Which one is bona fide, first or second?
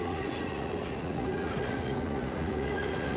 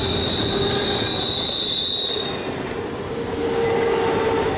second